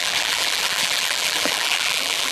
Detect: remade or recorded remade